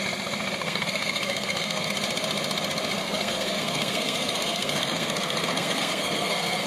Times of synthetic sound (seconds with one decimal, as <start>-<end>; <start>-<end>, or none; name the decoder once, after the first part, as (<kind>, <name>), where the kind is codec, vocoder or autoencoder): 0.6-1.9 (codec, SNAC); 3.0-6.7

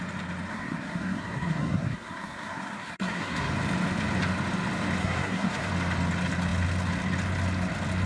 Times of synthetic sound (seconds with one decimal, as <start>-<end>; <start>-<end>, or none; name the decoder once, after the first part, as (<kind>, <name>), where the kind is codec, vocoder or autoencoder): 0.5-3.5 (codec, SNAC); 5.0-5.7

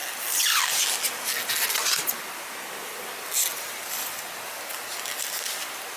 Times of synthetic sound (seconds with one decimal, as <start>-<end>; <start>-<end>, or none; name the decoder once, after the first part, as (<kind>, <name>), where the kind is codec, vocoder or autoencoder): none

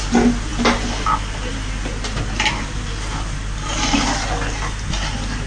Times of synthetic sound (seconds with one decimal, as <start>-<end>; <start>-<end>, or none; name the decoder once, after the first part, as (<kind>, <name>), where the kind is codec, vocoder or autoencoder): none

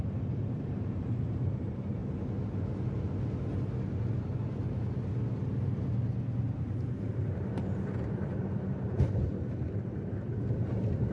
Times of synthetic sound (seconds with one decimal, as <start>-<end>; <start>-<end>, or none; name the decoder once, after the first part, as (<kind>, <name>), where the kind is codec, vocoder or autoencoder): 0.0-2.0 (vocoder, BigVGAN v2); 7.0-11.1

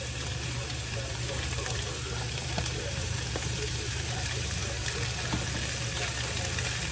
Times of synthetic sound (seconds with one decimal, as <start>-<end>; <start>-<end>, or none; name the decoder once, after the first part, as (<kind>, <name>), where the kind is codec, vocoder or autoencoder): 0.0-4.6 (vocoder, BigVGAN v2)

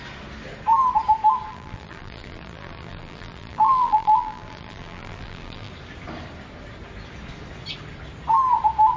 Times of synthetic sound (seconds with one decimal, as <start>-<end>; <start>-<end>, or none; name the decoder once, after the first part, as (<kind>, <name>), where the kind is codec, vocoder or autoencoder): 1.5-5.7 (vocoder, BigVGAN v2)

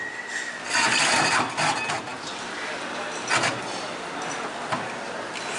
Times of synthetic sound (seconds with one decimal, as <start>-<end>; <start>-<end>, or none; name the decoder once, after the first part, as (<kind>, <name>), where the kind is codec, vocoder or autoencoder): none